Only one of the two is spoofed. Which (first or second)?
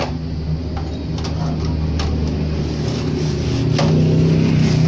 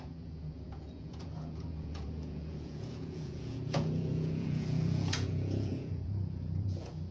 second